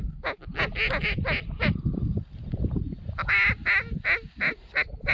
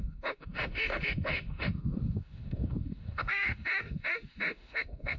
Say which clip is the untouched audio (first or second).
first